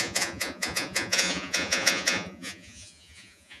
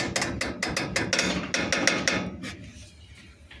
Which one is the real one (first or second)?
second